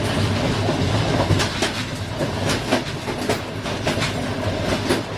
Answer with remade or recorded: recorded